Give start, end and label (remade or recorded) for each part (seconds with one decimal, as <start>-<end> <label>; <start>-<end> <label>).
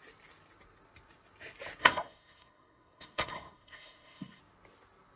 0.0-1.8 recorded; 1.8-4.4 remade; 4.4-5.2 recorded